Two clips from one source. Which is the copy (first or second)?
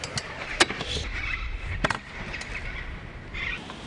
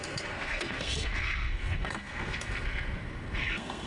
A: second